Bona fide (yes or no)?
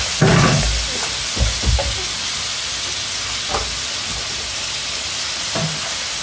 yes